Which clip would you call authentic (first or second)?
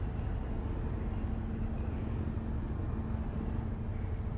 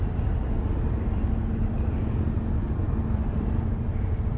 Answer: first